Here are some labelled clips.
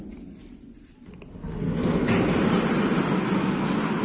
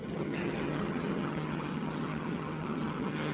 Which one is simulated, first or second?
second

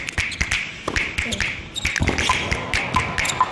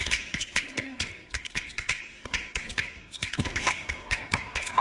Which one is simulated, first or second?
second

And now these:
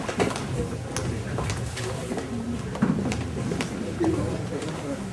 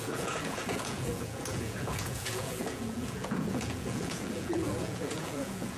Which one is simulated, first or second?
second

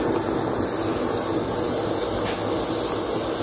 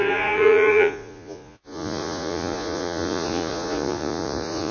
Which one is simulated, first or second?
second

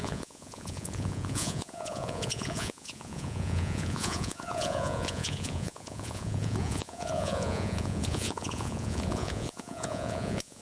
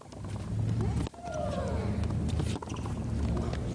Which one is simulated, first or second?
first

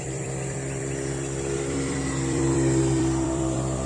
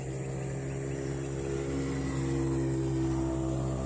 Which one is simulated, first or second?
first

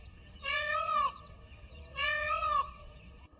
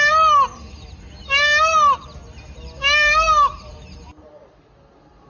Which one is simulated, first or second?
first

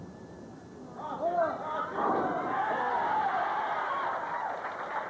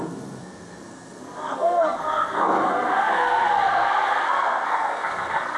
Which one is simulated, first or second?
second